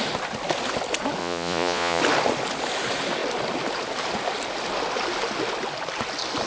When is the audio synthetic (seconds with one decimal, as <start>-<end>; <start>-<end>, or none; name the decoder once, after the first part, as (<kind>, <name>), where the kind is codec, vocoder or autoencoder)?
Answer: 1.2-2.0 (vocoder, Vocos)